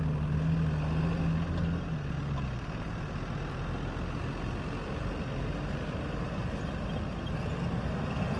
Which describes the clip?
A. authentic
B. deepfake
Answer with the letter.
A